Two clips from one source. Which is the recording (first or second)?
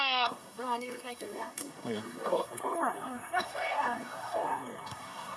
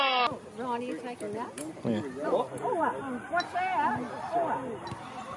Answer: second